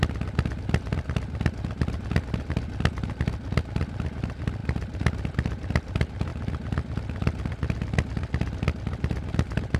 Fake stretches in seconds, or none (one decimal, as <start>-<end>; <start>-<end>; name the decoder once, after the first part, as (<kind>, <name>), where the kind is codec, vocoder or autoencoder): none